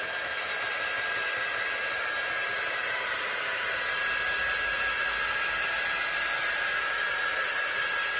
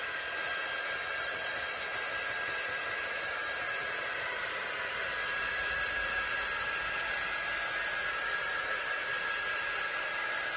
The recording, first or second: first